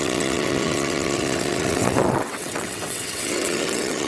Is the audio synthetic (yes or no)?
yes